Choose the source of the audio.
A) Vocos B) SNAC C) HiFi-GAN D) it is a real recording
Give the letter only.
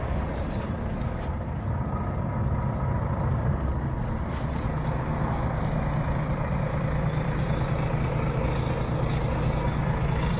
D